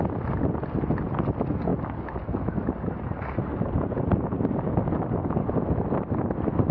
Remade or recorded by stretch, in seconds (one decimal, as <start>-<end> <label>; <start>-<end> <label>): 0.0-3.5 recorded; 3.5-4.7 remade; 4.7-6.7 recorded